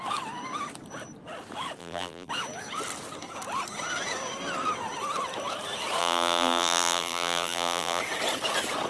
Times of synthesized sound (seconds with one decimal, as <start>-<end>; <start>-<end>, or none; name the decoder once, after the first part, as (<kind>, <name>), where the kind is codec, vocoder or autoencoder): 1.8-2.3 (vocoder, BigVGAN v2); 6.0-8.0